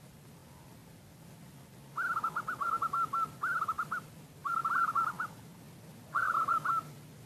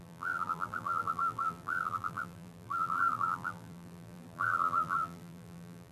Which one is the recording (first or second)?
first